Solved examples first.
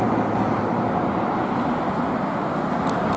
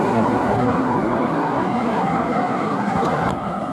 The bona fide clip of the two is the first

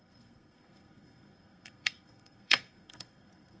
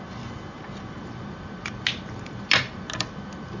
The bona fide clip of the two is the second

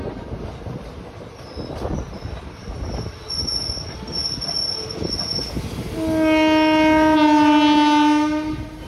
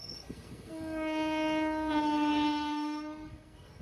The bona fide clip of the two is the first